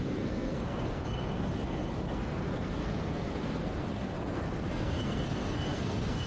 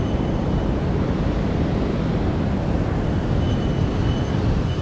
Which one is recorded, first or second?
second